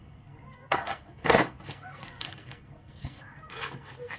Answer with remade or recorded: remade